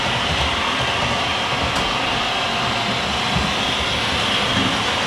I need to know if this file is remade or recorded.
recorded